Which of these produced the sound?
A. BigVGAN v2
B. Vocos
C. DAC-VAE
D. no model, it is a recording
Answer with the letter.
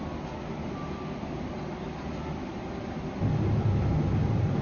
D